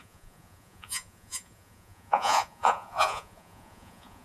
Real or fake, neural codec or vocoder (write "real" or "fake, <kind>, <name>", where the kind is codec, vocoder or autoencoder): fake, vocoder, Vocos